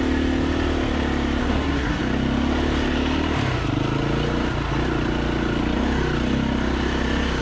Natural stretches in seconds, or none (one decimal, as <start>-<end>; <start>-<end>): 0.0-1.4; 2.0-7.4